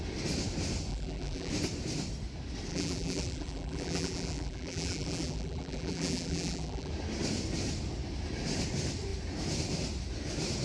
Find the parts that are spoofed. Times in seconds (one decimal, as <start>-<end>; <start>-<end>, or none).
0.9-1.5; 2.7-6.9